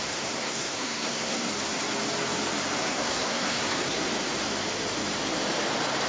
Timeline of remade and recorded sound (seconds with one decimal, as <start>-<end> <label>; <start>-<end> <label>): 0.0-1.5 remade; 1.5-2.8 recorded; 2.8-4.1 remade; 4.1-6.1 recorded